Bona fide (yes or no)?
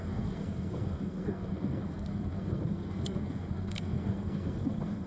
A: no